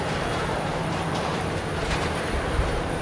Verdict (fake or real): fake